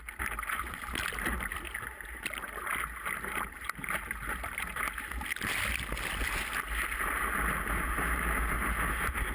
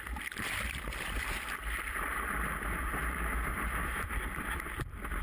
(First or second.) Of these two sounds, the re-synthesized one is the second